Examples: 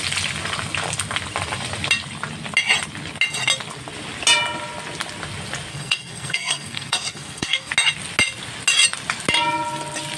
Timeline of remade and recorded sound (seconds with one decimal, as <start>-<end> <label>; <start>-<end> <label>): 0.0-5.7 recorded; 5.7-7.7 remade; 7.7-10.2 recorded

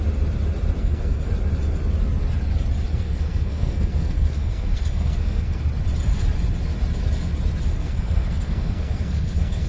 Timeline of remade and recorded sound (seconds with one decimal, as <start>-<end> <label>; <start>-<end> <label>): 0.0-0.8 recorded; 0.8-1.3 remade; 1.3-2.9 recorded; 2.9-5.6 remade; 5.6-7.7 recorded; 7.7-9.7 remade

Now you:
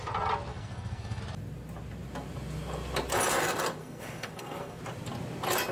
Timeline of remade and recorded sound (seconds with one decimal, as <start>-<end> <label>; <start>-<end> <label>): 0.0-0.5 recorded; 0.5-1.2 remade; 1.2-3.8 recorded; 3.8-4.8 remade; 4.8-5.7 recorded

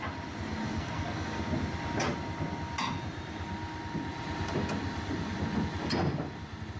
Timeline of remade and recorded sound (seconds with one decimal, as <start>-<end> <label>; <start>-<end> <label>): 0.0-0.6 recorded; 0.6-1.4 remade; 1.4-6.8 recorded